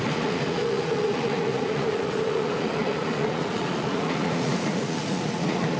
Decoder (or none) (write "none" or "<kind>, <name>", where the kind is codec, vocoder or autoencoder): vocoder, Vocos